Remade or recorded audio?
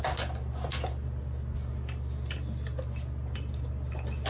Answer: recorded